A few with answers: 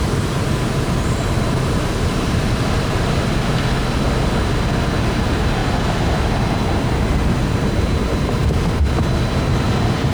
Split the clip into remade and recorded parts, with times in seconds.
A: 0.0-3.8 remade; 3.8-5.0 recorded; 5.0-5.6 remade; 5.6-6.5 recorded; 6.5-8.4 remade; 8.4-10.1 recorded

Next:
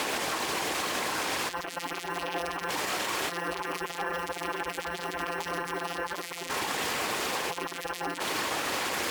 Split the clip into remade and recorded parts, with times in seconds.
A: 0.0-1.5 recorded; 1.5-2.7 remade; 2.7-3.3 recorded; 3.3-6.5 remade; 6.5-7.5 recorded; 7.5-8.2 remade; 8.2-9.1 recorded

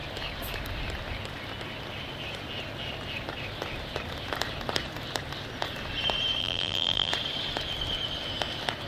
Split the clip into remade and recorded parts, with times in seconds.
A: 0.0-6.4 recorded; 6.4-7.1 remade; 7.1-8.9 recorded

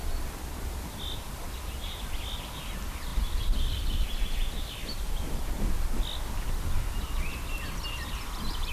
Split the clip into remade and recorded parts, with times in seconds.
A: 0.0-3.1 recorded; 3.1-5.6 remade; 5.6-8.7 recorded